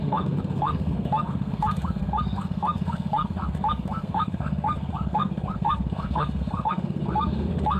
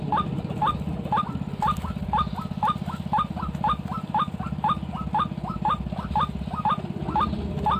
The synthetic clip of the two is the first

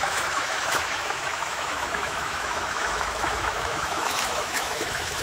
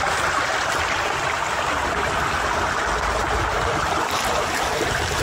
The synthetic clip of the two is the first